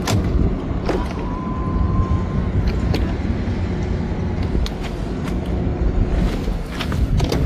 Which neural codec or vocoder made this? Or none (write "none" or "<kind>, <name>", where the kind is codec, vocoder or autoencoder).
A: none